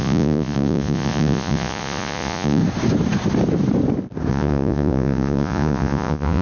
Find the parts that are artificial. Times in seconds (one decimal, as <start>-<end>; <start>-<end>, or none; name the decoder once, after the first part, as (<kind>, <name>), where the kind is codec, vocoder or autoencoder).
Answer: 0.0-2.6 (vocoder, Vocos); 4.3-6.4